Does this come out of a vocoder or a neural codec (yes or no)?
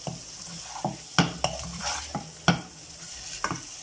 no